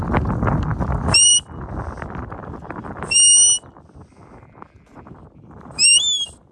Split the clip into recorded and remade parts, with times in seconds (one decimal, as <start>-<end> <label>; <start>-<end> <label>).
0.0-6.5 recorded